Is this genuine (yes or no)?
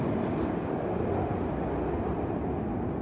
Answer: yes